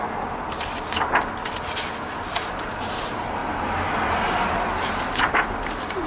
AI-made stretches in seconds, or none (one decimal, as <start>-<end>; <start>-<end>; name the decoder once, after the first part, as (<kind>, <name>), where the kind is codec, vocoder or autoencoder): none